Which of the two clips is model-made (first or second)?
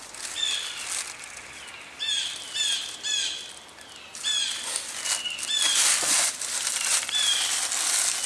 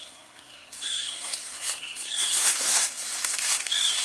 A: second